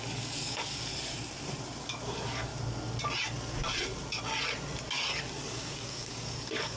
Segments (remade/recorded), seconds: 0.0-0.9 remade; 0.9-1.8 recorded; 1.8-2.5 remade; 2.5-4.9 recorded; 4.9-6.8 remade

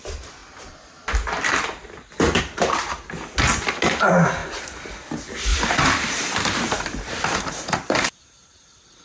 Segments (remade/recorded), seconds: 0.0-4.4 recorded; 4.4-4.9 remade; 4.9-5.5 recorded; 5.5-9.0 remade

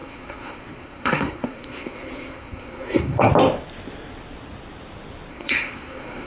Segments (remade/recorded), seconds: 0.0-3.3 remade; 3.3-5.3 recorded; 5.3-6.3 remade

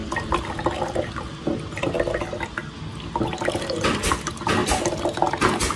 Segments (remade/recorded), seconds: 0.0-5.8 recorded

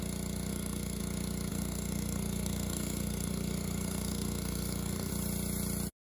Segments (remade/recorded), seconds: 0.0-0.5 recorded; 0.5-1.0 remade; 1.0-1.5 recorded; 1.5-5.1 remade; 5.1-6.0 recorded

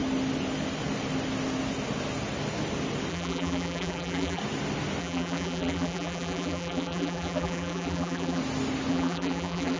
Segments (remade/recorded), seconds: 0.0-3.1 recorded; 3.1-4.4 remade; 4.4-5.0 recorded; 5.0-8.4 remade; 8.4-8.9 recorded; 8.9-9.8 remade